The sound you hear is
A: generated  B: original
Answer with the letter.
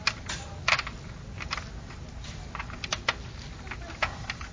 B